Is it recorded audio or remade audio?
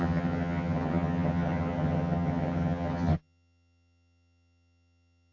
remade